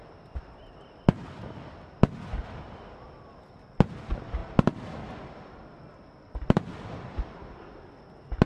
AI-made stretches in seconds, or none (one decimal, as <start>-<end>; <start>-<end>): 4.4-7.5